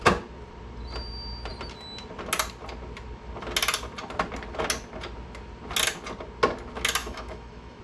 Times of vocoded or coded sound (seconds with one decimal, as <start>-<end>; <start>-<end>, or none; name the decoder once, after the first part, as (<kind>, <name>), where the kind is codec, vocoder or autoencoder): 7.0-7.8 (autoencoder, DAC-VAE)